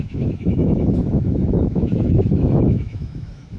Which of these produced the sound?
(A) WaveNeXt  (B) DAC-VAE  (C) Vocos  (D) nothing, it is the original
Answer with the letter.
B